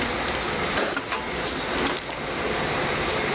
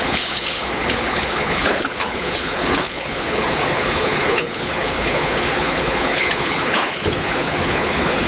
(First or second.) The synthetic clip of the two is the second